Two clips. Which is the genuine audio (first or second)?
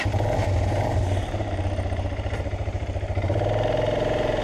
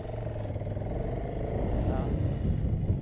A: second